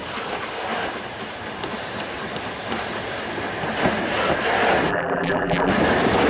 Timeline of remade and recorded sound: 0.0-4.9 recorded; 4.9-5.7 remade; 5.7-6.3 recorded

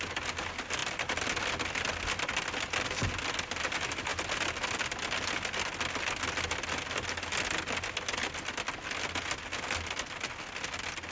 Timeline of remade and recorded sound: 0.0-11.1 recorded

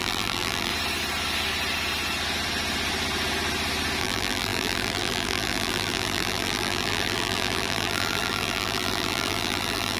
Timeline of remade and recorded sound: 0.0-0.7 remade; 0.7-4.0 recorded; 4.0-10.0 remade

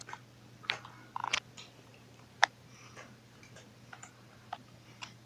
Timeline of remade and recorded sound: 0.0-1.9 recorded; 1.9-5.3 remade

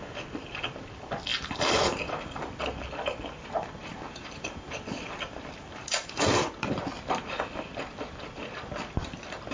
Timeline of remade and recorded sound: 0.0-1.3 recorded; 1.3-2.7 remade; 2.7-3.9 recorded; 3.9-6.8 remade; 6.8-9.5 recorded